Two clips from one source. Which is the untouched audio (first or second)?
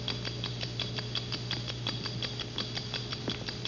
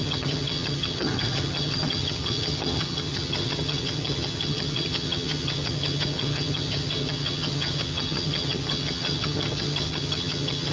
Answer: first